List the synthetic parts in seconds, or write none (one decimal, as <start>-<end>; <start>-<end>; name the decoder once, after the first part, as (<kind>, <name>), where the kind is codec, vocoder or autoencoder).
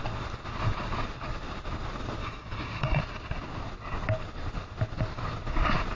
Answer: 2.2-3.0 (codec, DAC)